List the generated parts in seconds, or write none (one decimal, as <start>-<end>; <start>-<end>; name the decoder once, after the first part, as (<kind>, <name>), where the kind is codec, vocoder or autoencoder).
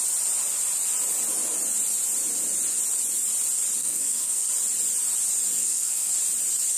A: 3.8-4.5 (codec, SNAC); 5.6-6.1